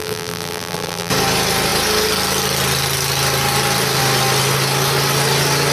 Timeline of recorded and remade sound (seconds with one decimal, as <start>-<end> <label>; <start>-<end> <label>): 0.0-1.1 remade; 1.1-5.7 recorded